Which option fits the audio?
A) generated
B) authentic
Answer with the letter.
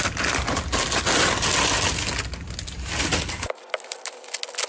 B